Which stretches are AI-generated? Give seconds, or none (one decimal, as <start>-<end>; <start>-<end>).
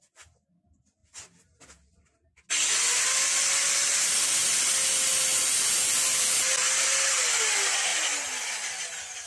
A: none